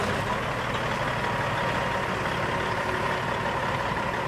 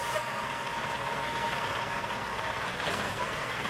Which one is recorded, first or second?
first